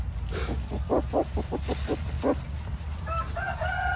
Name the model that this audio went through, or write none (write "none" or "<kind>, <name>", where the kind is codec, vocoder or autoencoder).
none